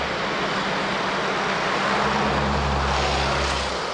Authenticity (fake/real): real